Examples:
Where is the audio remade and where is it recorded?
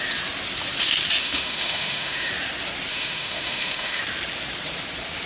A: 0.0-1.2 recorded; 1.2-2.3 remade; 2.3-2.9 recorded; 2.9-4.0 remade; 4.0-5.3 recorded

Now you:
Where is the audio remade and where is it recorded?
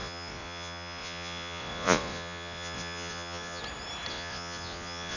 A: 0.0-3.6 remade; 3.6-4.1 recorded; 4.1-5.2 remade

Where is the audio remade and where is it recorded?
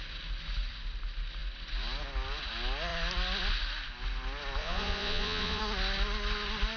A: 0.0-4.6 recorded; 4.6-5.6 remade; 5.6-6.8 recorded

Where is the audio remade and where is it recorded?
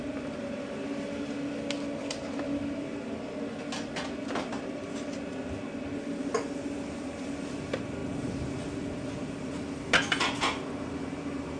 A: 0.0-11.6 recorded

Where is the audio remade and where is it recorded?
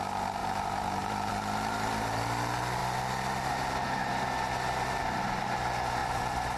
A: 0.0-0.4 recorded; 0.4-1.3 remade; 1.3-6.6 recorded